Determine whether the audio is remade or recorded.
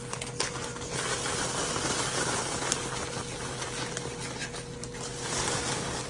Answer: recorded